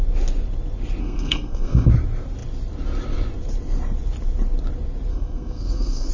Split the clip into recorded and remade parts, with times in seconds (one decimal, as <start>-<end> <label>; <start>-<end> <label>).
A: 0.0-1.0 recorded; 1.0-1.9 remade; 1.9-5.1 recorded; 5.1-6.1 remade